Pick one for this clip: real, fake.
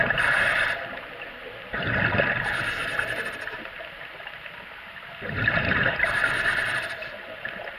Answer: real